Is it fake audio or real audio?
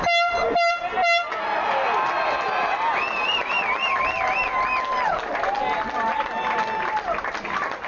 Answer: real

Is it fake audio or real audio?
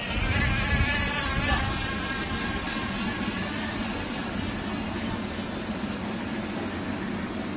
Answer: real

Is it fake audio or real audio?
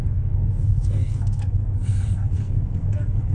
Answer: fake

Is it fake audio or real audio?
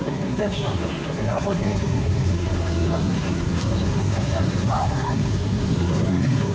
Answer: fake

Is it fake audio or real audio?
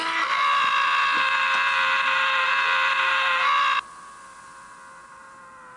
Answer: real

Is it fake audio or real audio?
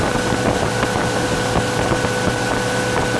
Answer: real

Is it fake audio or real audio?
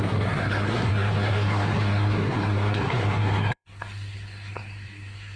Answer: fake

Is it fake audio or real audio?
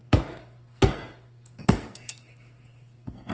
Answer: fake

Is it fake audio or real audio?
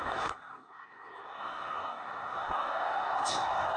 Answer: fake